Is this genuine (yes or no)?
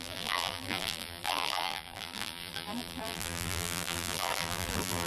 no